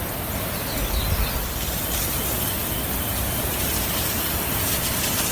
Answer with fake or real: real